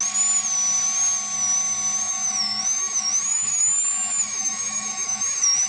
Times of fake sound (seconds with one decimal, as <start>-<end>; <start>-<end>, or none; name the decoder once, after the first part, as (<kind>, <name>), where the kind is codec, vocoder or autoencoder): 2.1-5.7 (autoencoder, DAC-VAE)

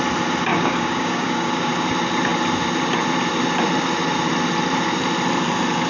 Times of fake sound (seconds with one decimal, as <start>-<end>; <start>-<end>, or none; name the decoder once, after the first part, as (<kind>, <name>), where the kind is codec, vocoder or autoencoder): 0.5-1.7 (codec, DAC)

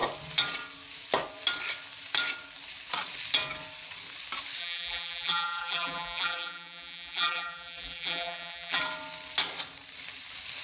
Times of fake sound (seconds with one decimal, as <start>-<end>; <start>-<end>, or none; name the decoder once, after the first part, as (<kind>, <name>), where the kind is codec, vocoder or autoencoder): 4.6-8.8 (vocoder, BigVGAN v2)

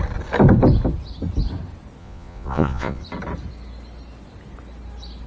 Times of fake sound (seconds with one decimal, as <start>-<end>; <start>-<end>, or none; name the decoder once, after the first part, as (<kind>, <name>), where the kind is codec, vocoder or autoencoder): 2.0-3.0 (vocoder, Vocos)